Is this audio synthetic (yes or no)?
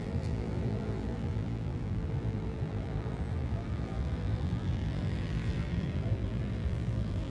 yes